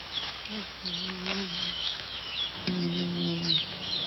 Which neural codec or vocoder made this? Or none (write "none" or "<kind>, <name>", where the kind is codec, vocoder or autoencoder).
autoencoder, DAC-VAE